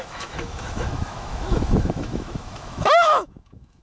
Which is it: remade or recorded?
remade